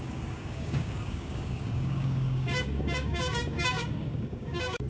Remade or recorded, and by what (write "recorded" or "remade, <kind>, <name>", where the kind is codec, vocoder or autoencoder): remade, codec, DAC